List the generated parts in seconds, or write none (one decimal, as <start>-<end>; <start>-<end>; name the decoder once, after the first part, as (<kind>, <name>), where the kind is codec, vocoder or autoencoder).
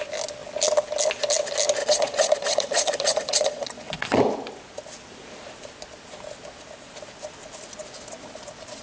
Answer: 1.8-4.2 (vocoder, Vocos)